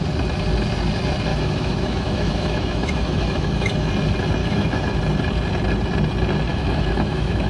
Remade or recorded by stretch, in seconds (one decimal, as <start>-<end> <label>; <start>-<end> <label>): 0.0-1.3 recorded; 1.3-3.9 remade; 3.9-4.4 recorded; 4.4-5.0 remade; 5.0-6.5 recorded; 6.5-7.5 remade